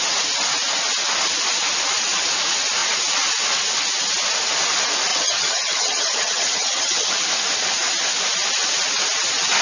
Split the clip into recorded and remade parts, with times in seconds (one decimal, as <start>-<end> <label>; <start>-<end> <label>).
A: 0.0-5.1 recorded; 5.1-7.1 remade; 7.1-9.6 recorded